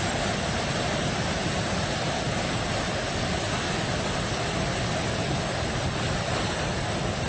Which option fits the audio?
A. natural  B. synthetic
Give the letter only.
A